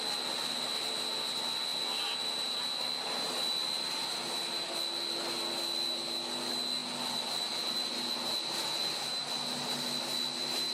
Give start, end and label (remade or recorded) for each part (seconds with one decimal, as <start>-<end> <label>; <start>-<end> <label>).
0.0-10.7 recorded